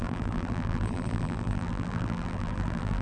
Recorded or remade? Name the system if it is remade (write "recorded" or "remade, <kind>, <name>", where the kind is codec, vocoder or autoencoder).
remade, vocoder, BigVGAN v2